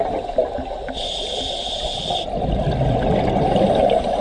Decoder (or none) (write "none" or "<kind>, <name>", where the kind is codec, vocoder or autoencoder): none